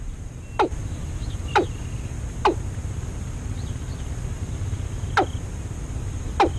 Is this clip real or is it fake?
real